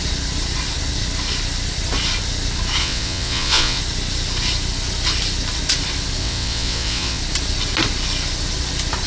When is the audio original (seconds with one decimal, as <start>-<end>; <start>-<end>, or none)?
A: 0.0-2.8; 3.8-6.2; 7.2-9.1